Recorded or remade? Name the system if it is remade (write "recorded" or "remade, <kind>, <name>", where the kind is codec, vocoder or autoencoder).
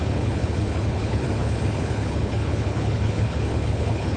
remade, codec, HILCodec